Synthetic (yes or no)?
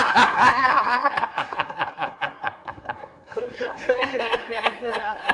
yes